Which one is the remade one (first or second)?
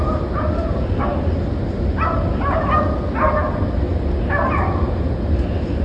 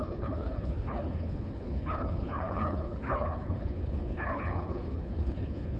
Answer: second